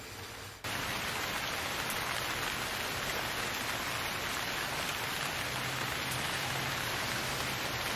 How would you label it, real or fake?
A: real